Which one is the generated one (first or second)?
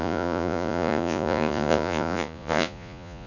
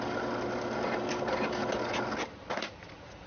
first